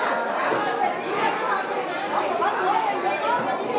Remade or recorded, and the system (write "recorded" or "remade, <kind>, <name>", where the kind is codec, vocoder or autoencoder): recorded